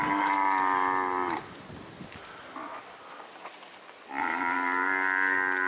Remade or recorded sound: recorded